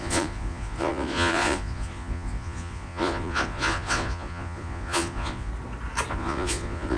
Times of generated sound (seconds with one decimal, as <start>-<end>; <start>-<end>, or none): 0.0-5.5; 6.1-7.0